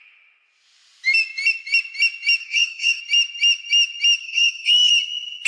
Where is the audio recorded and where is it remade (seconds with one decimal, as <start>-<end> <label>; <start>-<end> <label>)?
0.0-2.4 recorded; 2.4-3.0 remade; 3.0-4.2 recorded; 4.2-4.9 remade; 4.9-5.5 recorded